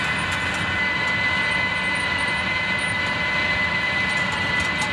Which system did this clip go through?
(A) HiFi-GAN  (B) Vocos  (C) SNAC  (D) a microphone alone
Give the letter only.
D